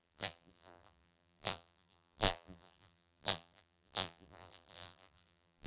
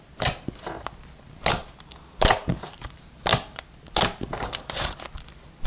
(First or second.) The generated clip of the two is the first